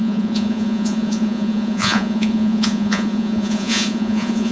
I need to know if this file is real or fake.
fake